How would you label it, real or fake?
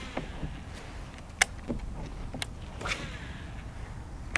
real